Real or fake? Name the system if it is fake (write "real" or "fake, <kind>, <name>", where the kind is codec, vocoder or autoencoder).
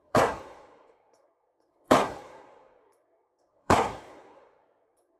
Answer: fake, codec, SNAC